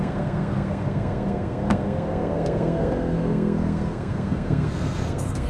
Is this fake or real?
fake